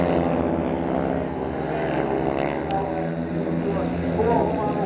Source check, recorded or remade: recorded